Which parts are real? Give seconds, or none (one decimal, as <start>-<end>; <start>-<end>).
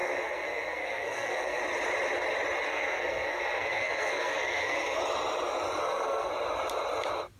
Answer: 1.6-2.7; 5.0-5.8; 6.3-7.4